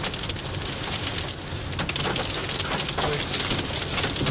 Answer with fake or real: real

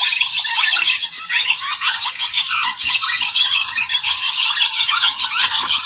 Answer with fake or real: fake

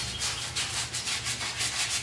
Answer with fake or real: real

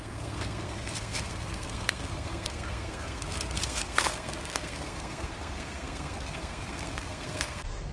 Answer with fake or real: fake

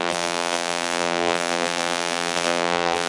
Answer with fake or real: fake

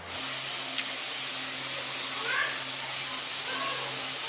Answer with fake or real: real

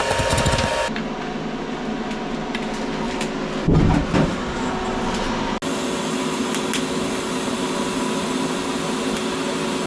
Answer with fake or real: real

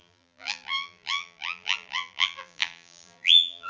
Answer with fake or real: fake